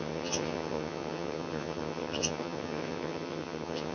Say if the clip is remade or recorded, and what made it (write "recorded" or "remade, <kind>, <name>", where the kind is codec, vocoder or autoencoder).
remade, vocoder, HiFi-GAN